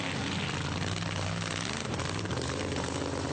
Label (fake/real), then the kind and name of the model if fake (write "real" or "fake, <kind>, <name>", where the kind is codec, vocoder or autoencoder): real